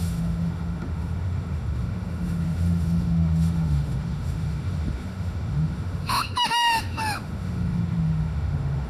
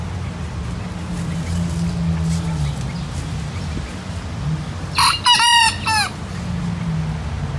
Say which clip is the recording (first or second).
second